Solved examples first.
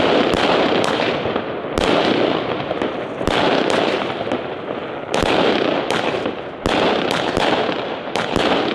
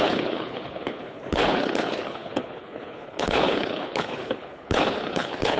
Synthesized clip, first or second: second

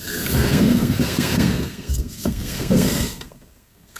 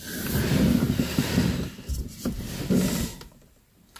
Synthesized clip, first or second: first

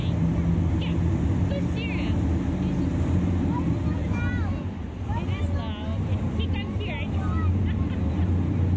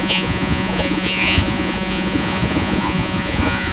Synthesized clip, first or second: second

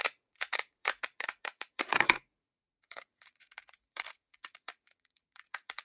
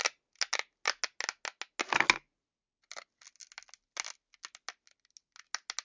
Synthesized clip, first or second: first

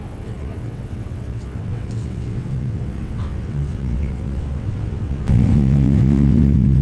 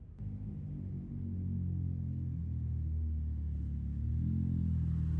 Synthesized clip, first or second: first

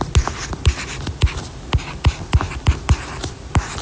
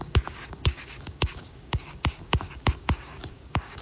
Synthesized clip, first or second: second